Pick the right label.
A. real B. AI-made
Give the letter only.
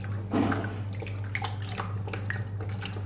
A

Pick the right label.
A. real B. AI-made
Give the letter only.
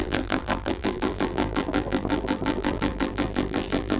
B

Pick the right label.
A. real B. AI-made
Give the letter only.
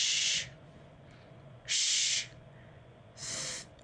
B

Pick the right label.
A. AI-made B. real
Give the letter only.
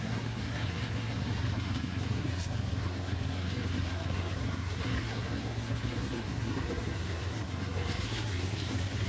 A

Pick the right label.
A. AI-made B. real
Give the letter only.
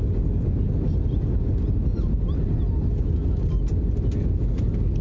B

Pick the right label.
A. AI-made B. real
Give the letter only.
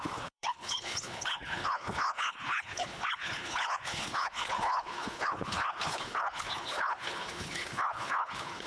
A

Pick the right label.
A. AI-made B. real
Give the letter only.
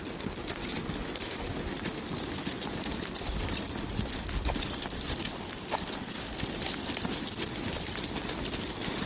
B